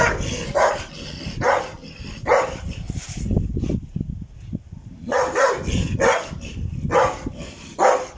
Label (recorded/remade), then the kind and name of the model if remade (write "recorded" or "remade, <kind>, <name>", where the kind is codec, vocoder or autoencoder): recorded